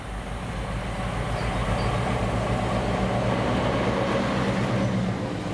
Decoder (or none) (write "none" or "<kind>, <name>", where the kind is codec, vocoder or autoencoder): none